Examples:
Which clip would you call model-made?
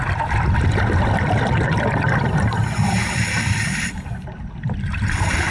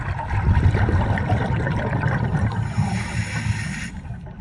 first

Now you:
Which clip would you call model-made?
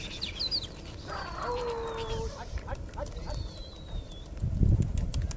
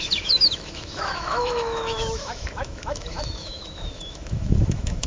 second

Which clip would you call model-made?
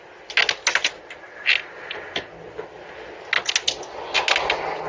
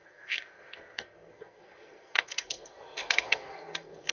second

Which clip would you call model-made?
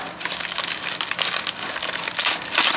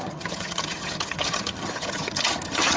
second